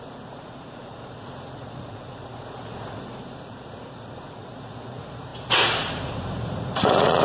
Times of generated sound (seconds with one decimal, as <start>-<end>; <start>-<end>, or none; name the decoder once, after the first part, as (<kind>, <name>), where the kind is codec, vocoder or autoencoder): 0.0-7.2 (vocoder, Vocos)